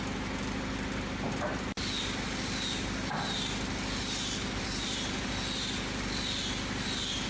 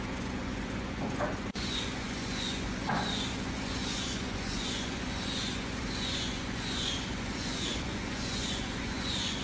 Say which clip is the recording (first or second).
first